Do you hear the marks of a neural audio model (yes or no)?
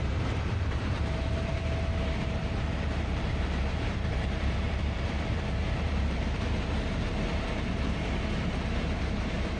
yes